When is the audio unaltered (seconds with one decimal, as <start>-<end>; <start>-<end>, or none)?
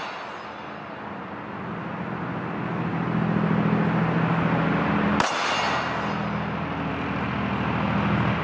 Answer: 0.0-8.4